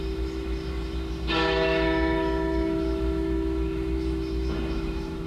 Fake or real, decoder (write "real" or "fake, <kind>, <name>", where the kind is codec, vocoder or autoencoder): fake, autoencoder, DAC-VAE